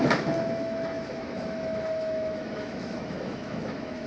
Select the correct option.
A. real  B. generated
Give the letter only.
B